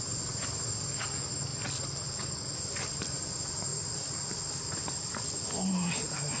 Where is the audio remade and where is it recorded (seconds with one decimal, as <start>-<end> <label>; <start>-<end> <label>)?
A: 0.0-3.7 recorded; 3.7-5.2 remade; 5.2-6.4 recorded

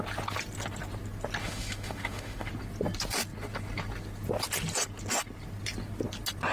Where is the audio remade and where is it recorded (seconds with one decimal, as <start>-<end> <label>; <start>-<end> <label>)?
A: 0.0-1.4 recorded; 1.4-2.5 remade; 2.5-6.5 recorded